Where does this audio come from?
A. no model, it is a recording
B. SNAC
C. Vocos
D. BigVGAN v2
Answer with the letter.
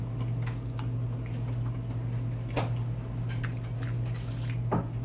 A